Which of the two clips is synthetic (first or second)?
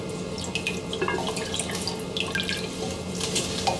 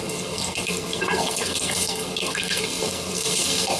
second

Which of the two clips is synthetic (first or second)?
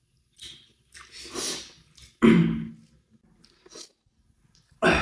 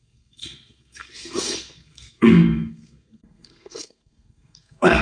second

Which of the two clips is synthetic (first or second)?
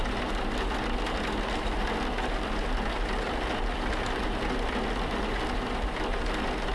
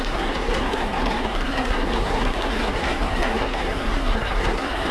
second